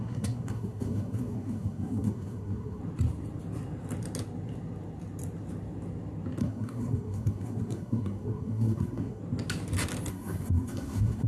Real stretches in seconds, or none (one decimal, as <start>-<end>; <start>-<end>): 2.8-6.4; 9.2-10.1